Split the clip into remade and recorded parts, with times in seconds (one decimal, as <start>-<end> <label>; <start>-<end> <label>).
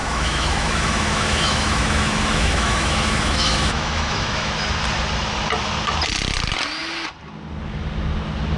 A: 0.0-4.5 remade; 4.5-8.6 recorded